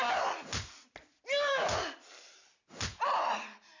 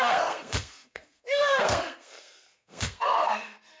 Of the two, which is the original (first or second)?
first